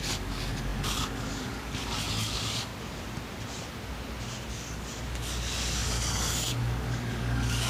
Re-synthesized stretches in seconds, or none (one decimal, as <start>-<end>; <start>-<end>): 0.0-2.7; 4.5-7.7